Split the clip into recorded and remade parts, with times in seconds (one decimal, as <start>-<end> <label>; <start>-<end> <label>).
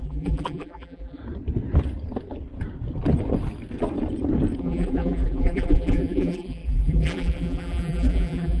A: 0.0-1.2 remade; 1.2-4.6 recorded; 4.6-8.6 remade